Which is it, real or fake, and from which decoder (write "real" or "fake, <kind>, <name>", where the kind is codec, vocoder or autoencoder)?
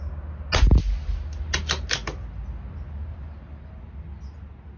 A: real